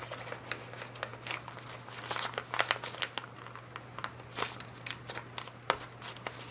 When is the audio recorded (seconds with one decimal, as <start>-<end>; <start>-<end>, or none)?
0.0-6.5